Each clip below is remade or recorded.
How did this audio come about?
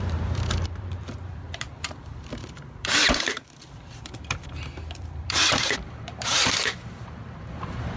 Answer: remade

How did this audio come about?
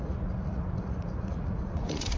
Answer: remade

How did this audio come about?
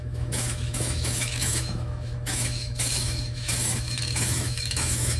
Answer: remade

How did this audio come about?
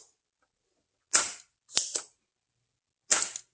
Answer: recorded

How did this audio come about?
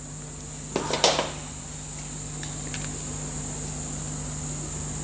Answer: recorded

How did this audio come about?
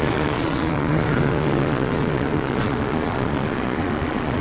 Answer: remade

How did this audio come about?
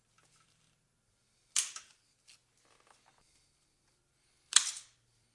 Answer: recorded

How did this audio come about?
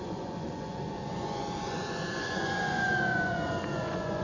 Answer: remade